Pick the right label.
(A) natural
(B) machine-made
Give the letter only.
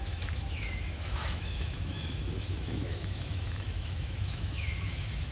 B